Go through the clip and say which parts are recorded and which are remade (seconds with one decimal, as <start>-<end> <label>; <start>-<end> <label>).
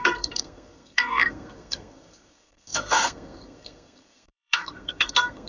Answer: 0.0-5.5 remade